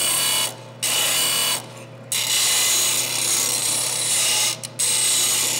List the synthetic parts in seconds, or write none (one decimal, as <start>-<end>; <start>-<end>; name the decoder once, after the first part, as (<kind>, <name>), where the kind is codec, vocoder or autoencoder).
3.6-4.1 (vocoder, BigVGAN v2)